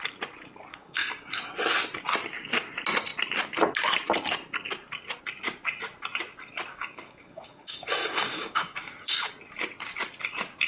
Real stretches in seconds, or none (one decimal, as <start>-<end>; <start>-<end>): 0.0-0.7; 1.3-6.7; 9.3-10.7